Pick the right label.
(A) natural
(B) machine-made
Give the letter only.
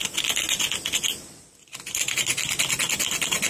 A